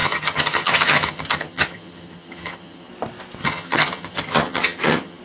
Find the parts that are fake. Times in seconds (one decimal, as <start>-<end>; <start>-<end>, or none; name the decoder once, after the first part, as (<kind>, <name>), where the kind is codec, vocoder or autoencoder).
0.0-2.9 (vocoder, HiFi-GAN); 3.4-5.2